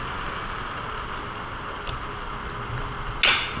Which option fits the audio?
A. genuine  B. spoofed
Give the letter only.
A